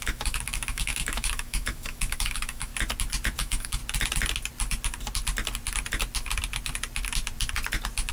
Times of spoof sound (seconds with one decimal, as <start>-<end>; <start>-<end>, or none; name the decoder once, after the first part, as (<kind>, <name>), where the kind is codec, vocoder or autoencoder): 0.0-2.7 (autoencoder, DAC-VAE); 3.4-3.8